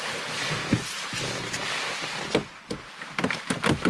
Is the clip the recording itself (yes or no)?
yes